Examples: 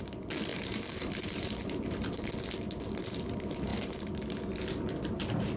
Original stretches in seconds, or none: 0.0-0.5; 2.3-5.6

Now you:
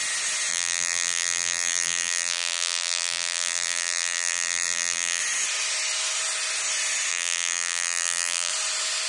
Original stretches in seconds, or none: 0.0-0.5; 5.2-7.1; 8.5-9.1

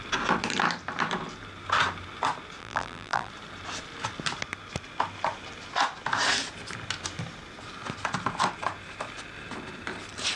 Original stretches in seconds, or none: 0.0-2.6; 3.3-10.4

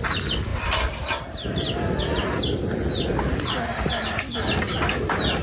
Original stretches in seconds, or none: 0.0-5.4

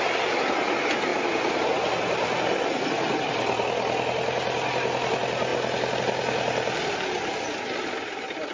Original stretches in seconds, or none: 0.0-1.1; 2.6-8.5

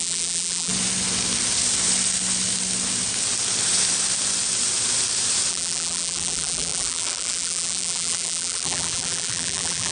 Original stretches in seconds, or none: 0.7-5.5

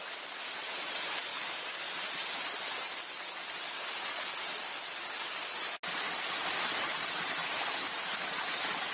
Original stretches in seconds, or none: 1.3-5.9; 7.4-8.9

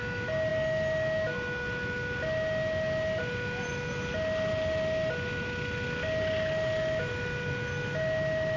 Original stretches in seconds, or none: 0.0-8.6